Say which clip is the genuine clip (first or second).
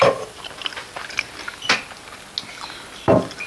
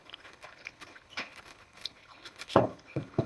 first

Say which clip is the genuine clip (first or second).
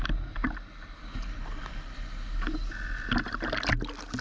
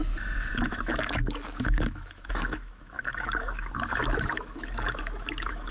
first